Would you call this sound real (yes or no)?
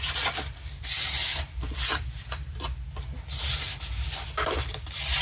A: yes